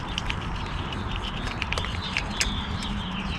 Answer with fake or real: fake